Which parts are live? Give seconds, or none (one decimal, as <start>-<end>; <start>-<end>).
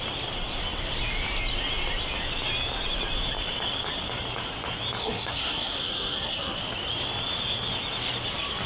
0.0-5.0; 6.6-8.7